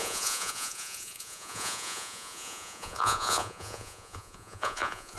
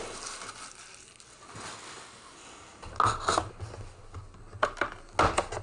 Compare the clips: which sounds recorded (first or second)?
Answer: second